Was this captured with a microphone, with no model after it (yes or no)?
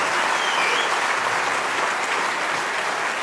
yes